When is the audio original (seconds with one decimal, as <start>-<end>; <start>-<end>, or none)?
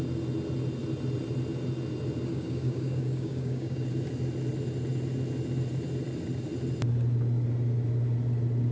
0.0-2.3; 3.9-8.7